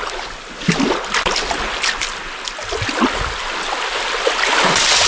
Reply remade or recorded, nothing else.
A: recorded